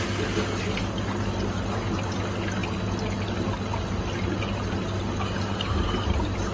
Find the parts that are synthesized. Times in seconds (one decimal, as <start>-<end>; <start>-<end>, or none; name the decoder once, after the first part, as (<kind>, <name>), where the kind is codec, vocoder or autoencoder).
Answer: none